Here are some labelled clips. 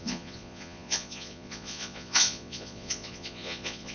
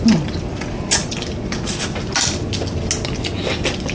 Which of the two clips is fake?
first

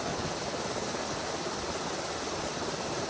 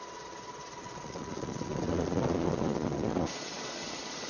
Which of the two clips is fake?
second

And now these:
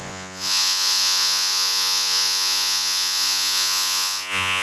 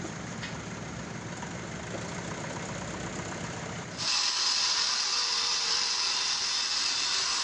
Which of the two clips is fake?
first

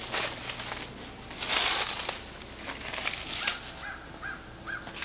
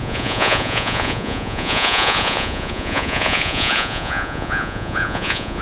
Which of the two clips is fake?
second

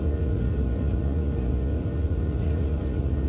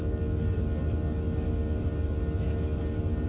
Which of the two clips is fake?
first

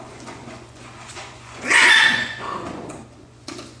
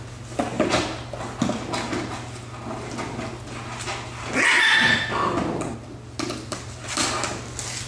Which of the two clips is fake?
first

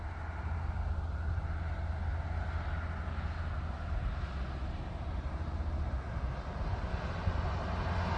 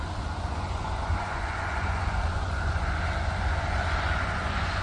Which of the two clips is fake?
second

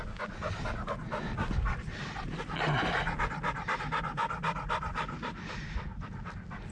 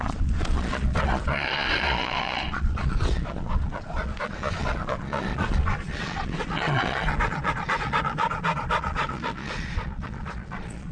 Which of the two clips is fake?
second